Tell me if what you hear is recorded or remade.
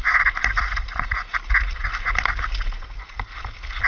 recorded